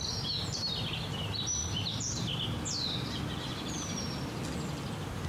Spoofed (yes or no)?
no